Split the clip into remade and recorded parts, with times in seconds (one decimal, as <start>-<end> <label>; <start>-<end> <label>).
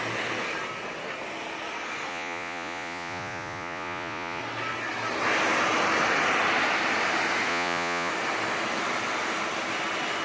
0.0-2.1 recorded; 2.1-4.4 remade; 4.4-7.5 recorded; 7.5-8.1 remade; 8.1-10.2 recorded